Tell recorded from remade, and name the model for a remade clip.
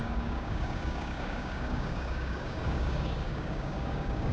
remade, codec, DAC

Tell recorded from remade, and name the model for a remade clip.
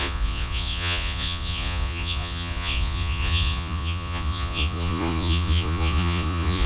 remade, vocoder, Vocos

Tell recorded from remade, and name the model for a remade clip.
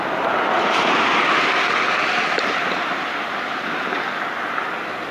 recorded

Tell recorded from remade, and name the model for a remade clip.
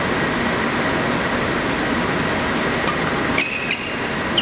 recorded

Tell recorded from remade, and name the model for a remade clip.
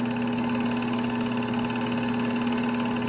recorded